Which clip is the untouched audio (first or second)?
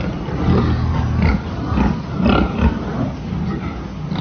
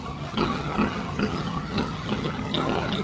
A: first